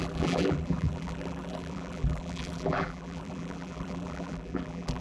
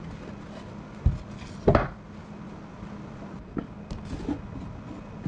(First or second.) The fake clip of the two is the first